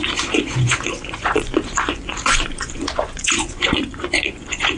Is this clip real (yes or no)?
no